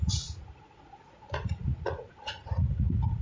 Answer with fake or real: fake